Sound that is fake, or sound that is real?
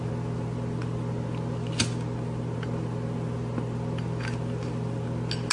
real